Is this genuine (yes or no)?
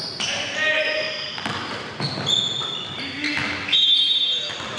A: yes